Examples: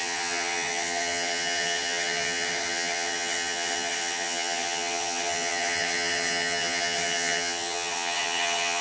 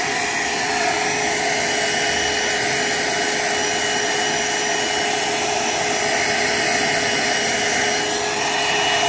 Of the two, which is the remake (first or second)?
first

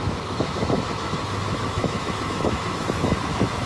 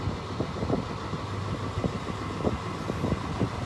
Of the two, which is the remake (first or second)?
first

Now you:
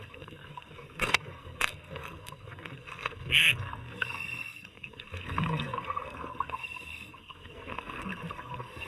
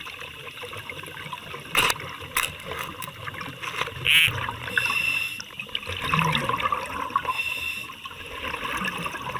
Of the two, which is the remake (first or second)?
first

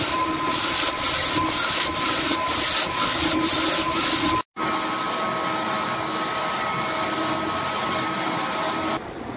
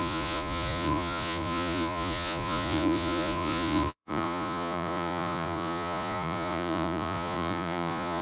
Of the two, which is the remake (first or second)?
second